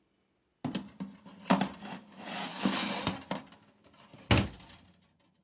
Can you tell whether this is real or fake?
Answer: real